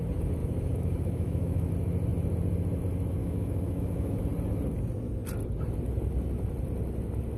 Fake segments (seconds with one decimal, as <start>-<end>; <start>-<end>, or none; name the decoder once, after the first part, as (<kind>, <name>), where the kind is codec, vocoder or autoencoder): 0.4-1.7 (autoencoder, DAC-VAE); 3.2-4.2